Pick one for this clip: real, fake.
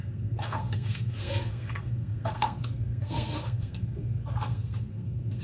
fake